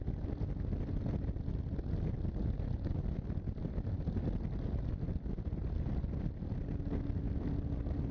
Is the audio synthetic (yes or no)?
no